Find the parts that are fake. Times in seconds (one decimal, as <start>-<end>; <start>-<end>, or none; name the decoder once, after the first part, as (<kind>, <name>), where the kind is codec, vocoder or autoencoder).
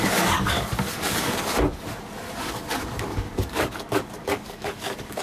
0.0-1.5 (codec, DAC); 2.4-5.2